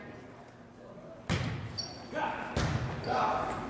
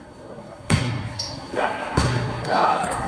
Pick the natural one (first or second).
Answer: first